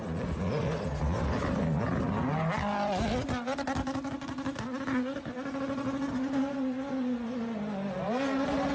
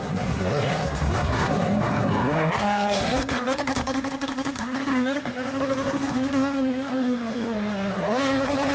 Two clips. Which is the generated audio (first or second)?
second